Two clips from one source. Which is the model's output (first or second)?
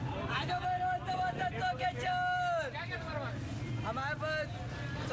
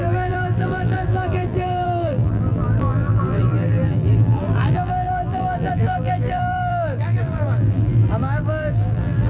second